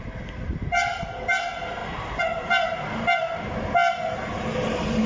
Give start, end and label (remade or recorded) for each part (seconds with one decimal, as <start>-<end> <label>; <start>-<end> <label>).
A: 0.0-5.1 recorded